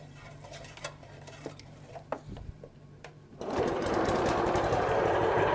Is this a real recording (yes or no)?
no